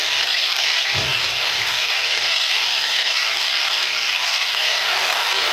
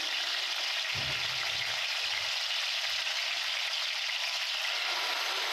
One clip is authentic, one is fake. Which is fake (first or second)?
first